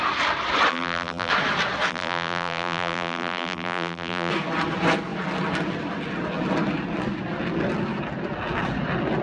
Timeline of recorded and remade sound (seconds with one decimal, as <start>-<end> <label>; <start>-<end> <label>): 0.0-0.7 recorded; 0.7-1.3 remade; 1.3-1.9 recorded; 1.9-4.3 remade; 4.3-9.2 recorded